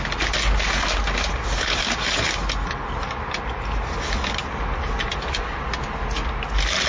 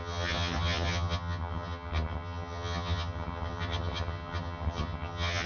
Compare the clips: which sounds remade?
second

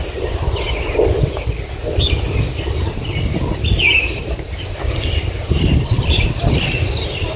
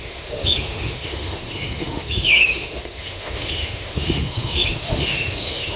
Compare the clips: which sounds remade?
second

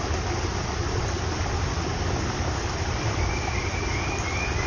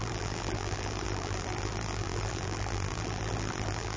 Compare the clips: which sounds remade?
second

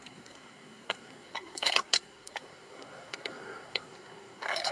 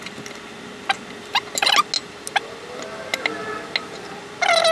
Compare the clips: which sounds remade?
first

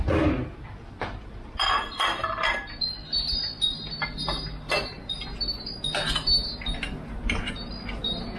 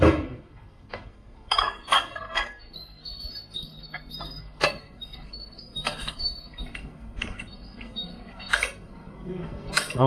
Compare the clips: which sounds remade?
second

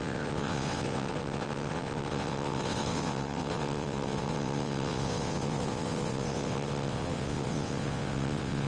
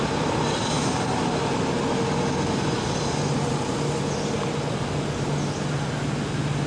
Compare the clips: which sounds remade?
first